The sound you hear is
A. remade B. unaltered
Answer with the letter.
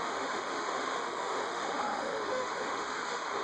A